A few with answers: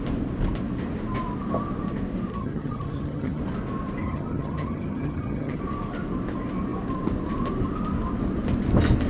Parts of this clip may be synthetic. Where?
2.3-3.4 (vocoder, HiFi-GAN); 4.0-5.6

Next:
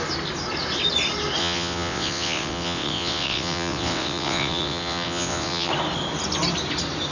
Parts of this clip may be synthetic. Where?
1.4-5.7 (vocoder, WaveNeXt)